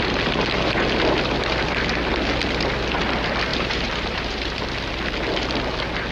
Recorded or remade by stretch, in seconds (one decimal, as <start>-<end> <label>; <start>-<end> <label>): 0.0-3.5 recorded; 3.5-4.6 remade; 4.6-6.1 recorded